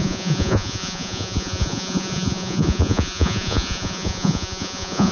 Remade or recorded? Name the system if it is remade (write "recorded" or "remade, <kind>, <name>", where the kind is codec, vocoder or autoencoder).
remade, vocoder, Vocos